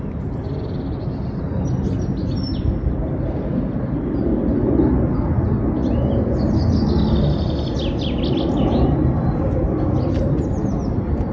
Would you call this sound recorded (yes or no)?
yes